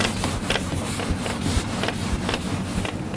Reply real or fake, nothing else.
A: real